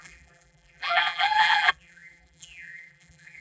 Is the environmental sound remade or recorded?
remade